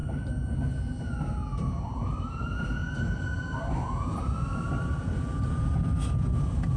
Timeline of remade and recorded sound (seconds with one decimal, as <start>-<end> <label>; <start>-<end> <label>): 0.0-1.8 recorded; 1.8-2.8 remade; 2.8-4.7 recorded; 4.7-6.8 remade